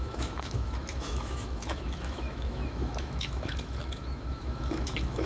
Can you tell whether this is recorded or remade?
remade